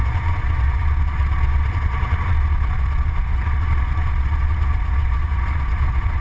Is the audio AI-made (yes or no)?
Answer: yes